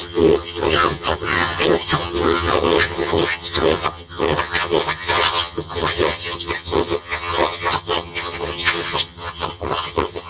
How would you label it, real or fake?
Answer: fake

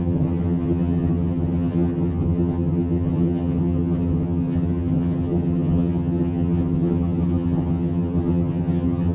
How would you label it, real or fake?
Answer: fake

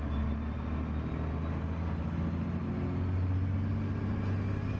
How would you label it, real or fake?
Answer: real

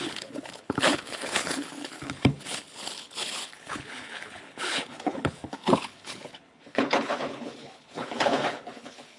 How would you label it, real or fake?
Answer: fake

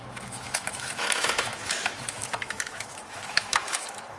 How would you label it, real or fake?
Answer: fake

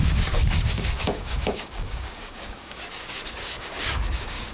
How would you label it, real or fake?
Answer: fake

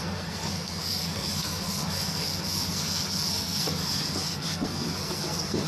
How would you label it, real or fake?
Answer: fake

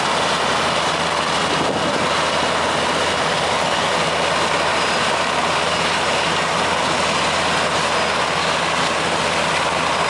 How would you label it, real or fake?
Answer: real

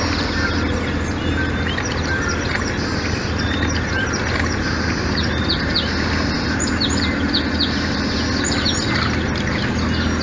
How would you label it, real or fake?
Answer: real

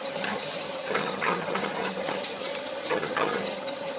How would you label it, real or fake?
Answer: fake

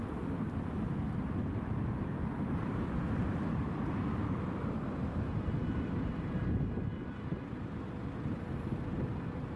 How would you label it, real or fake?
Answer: fake